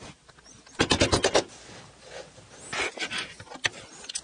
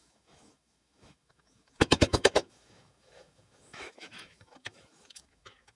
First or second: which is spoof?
second